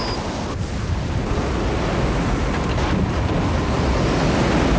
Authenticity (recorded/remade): recorded